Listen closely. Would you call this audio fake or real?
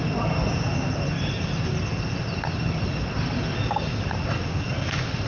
real